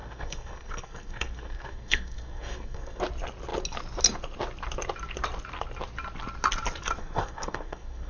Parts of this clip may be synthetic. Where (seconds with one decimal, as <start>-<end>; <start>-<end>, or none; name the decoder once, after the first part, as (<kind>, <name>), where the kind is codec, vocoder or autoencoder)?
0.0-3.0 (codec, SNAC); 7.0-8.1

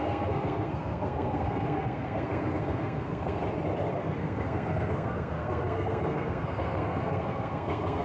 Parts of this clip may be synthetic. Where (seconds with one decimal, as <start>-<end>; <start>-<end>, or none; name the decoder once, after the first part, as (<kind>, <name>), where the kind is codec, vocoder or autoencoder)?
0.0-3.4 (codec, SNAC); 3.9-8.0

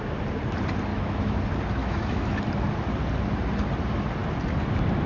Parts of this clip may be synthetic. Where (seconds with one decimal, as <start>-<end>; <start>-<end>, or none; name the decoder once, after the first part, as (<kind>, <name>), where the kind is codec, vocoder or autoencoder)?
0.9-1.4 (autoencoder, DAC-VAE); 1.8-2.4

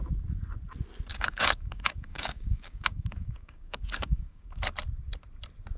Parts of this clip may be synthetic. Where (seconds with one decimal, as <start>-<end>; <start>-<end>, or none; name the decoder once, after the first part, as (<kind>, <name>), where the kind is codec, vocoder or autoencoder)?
1.1-4.6 (codec, DAC)